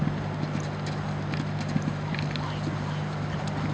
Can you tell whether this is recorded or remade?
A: recorded